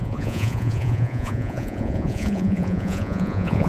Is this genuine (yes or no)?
no